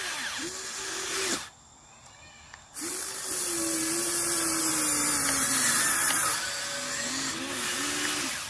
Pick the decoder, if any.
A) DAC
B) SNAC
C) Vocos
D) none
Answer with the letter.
D